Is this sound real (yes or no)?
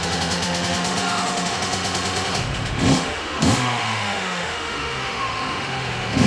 no